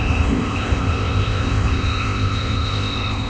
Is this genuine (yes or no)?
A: no